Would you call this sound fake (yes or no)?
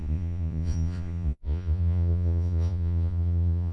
yes